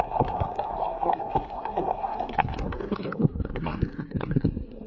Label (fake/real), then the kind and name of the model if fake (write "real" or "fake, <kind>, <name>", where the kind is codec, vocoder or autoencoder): fake, codec, SNAC